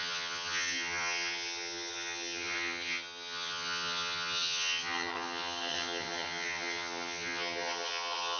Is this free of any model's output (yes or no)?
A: no